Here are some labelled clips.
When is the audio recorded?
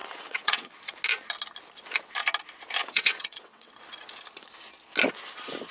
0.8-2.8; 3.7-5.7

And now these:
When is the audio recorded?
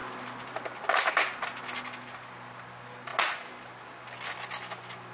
0.0-5.1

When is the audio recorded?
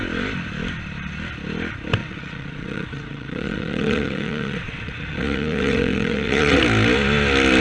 0.0-2.0; 6.6-7.6